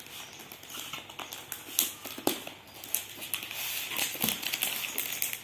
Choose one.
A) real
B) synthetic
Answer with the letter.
A